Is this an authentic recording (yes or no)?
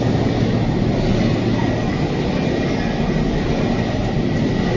yes